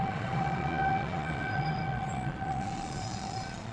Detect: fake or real fake